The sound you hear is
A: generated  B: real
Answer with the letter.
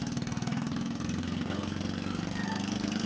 A